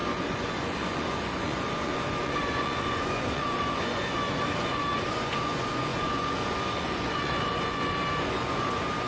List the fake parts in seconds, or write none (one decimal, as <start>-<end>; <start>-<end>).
0.0-9.1

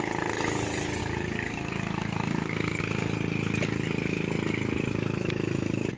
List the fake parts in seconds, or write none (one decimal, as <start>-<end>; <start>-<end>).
1.0-2.8

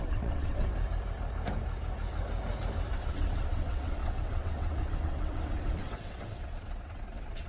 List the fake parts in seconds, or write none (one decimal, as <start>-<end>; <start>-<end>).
0.0-0.7; 2.9-7.5

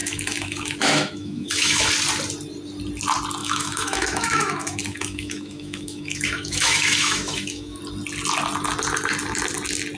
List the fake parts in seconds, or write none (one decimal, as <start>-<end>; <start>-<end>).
0.0-1.9; 3.4-7.8

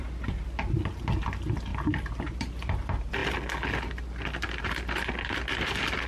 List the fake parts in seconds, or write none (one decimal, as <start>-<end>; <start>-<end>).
1.7-2.4